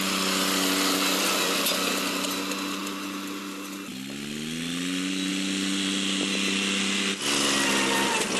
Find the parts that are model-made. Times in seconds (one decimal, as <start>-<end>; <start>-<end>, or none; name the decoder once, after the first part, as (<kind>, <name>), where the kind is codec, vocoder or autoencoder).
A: none